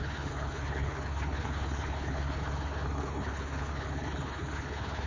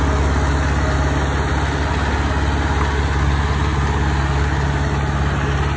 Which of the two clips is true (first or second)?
second